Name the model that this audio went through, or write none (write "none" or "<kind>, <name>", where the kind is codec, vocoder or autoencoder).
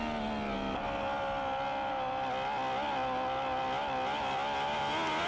none